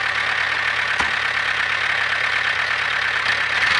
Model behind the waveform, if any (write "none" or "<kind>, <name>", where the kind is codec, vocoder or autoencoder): none